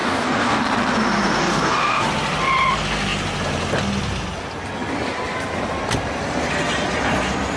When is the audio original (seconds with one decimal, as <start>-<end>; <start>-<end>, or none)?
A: 0.6-1.4; 2.0-7.6